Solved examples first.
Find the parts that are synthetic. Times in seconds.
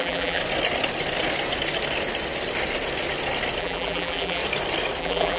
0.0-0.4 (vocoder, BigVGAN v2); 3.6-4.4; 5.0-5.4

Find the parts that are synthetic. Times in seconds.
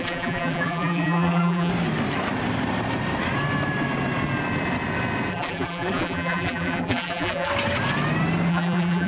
0.0-1.7 (vocoder, BigVGAN v2); 5.3-7.5; 8.5-9.1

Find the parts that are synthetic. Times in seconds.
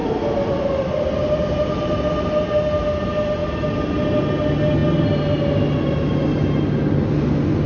0.0-1.7 (vocoder, BigVGAN v2)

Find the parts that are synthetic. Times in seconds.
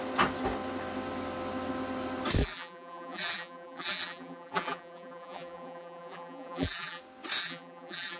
2.4-7.0 (vocoder, BigVGAN v2); 7.4-8.2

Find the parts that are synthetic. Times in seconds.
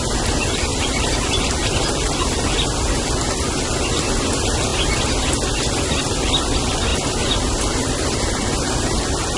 0.7-3.0 (vocoder, BigVGAN v2); 6.9-9.0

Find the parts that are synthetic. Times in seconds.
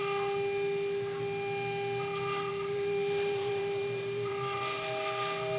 2.5-4.3 (vocoder, BigVGAN v2)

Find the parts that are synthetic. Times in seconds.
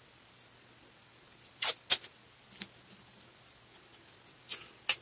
none